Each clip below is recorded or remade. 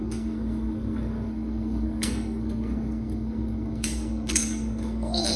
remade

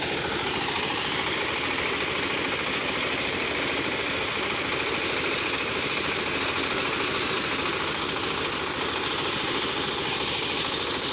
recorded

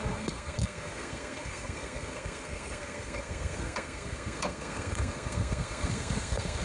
remade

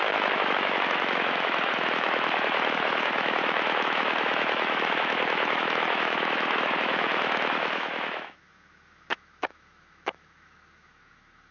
remade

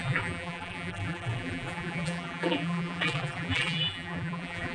remade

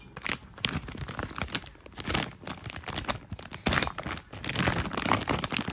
recorded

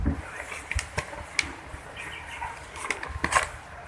recorded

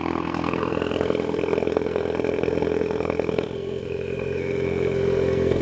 remade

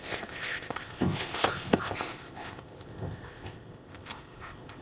remade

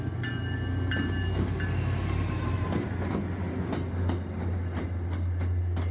recorded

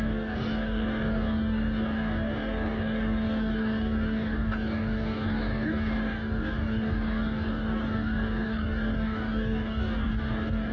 remade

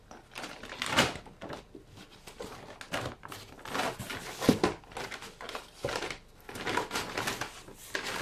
recorded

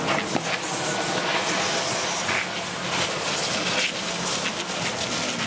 recorded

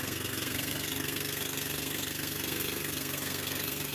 remade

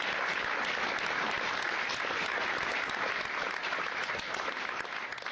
recorded